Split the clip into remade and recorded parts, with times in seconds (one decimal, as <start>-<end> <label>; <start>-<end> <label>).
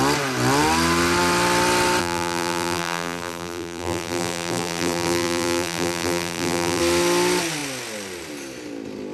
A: 0.0-2.0 recorded; 2.0-6.8 remade; 6.8-9.1 recorded